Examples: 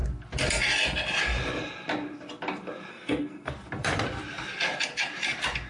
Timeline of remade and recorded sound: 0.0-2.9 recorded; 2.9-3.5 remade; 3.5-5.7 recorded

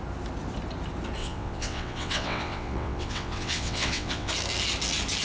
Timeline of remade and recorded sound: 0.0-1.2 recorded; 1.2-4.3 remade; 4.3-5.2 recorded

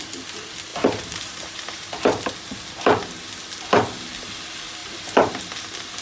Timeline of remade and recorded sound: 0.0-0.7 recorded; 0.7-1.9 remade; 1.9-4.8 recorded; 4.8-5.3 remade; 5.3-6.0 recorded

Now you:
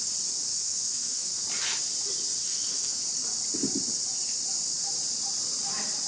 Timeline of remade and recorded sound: 0.0-0.5 recorded; 0.5-1.4 remade; 1.4-2.4 recorded; 2.4-3.0 remade; 3.0-6.1 recorded

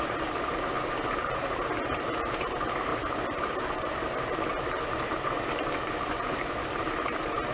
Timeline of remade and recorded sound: 0.0-7.5 remade

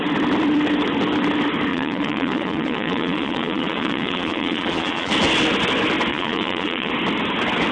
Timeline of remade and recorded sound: 0.0-1.7 recorded; 1.7-5.1 remade; 5.1-6.1 recorded; 6.1-6.9 remade; 6.9-7.7 recorded

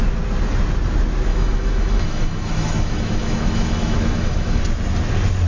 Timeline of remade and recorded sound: 0.0-1.3 recorded; 1.3-4.6 remade; 4.6-5.5 recorded

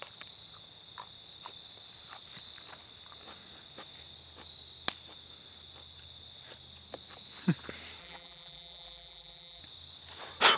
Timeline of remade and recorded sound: 0.0-8.0 recorded; 8.0-9.6 remade; 9.6-10.6 recorded